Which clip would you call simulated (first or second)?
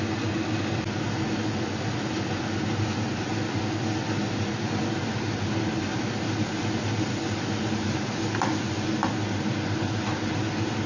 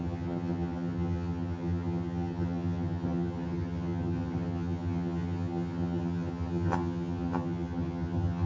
second